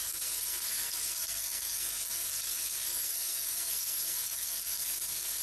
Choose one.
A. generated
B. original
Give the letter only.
A